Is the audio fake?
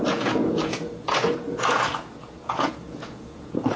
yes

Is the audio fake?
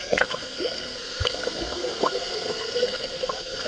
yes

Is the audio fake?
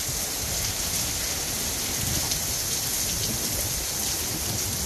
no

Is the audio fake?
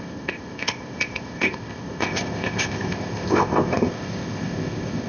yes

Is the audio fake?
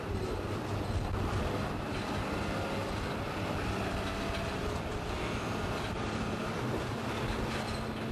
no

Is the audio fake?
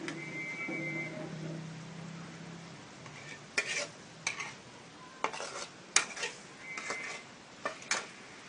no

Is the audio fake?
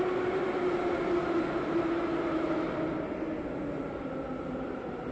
no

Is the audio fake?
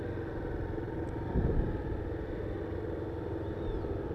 no